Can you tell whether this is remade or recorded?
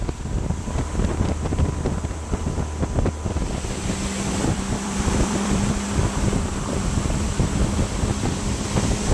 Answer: remade